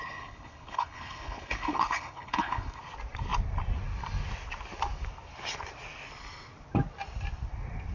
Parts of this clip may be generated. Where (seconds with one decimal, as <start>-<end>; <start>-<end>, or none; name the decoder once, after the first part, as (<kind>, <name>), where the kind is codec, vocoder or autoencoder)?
0.0-2.8 (codec, HILCodec)